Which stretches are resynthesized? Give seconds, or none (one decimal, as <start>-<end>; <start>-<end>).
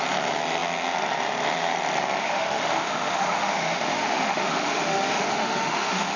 2.2-6.2